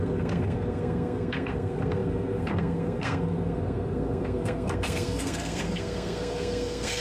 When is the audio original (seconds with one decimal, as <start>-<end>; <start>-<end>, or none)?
none